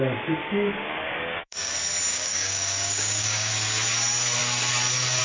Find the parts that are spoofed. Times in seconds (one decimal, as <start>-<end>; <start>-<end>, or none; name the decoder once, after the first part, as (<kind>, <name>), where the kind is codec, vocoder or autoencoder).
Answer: 0.4-1.7 (codec, DAC); 2.1-3.5